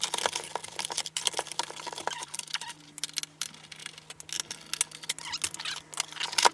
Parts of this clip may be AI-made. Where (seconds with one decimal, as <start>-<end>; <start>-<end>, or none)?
0.6-2.8